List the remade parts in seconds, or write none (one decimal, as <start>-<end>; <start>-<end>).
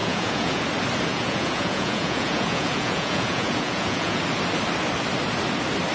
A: 0.0-0.6; 1.1-4.2